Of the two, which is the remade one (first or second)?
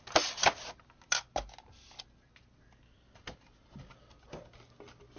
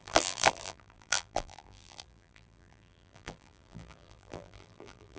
second